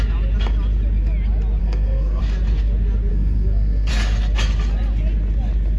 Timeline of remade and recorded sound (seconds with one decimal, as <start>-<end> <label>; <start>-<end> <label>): 0.0-1.6 recorded; 1.6-2.2 remade; 2.2-3.1 recorded; 3.1-3.9 remade; 3.9-5.8 recorded